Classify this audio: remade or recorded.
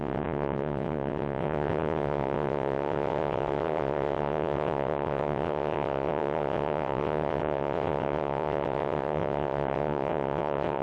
remade